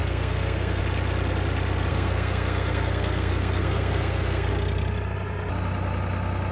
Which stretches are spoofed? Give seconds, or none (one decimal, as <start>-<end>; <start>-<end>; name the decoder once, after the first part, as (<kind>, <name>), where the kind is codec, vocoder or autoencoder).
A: 0.0-0.8 (codec, SNAC); 1.9-4.5